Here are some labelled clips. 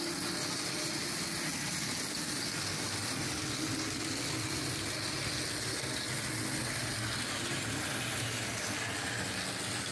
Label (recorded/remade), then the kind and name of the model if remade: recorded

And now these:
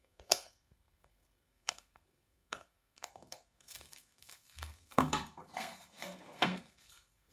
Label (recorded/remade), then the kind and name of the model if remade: remade, codec, SNAC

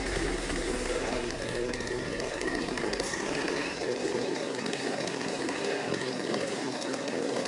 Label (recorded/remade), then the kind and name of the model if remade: remade, codec, SNAC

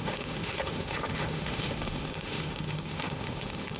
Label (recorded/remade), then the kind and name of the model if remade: remade, autoencoder, DAC-VAE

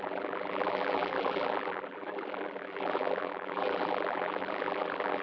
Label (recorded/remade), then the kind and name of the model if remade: remade, vocoder, BigVGAN v2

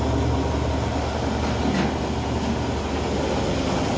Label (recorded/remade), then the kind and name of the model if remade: recorded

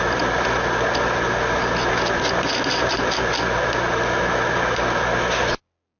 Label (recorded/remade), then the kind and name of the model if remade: recorded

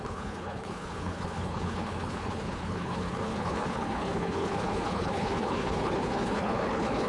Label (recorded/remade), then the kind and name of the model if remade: remade, codec, HILCodec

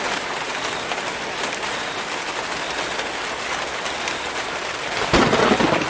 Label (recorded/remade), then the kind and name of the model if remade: recorded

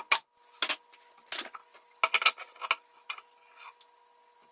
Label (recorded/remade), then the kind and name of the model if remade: recorded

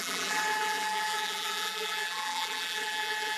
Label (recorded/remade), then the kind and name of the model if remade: remade, vocoder, BigVGAN v2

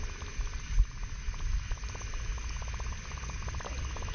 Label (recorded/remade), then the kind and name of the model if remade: recorded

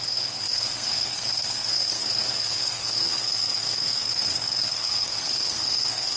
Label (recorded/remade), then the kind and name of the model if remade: remade, codec, SNAC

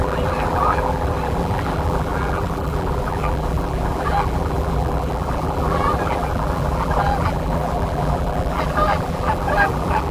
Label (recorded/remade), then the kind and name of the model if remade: remade, vocoder, BigVGAN v2